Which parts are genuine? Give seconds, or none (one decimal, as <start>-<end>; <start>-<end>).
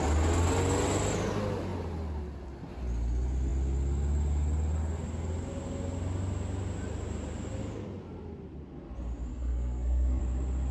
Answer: 0.0-9.3; 10.2-10.7